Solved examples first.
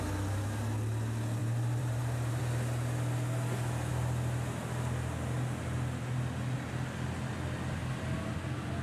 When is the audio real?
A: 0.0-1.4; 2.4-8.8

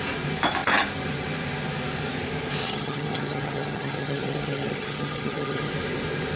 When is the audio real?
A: 0.0-2.6; 5.7-6.4

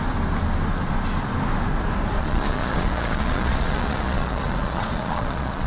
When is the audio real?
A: 0.0-2.2

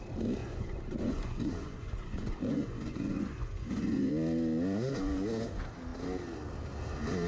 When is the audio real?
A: 0.0-0.4; 4.1-7.3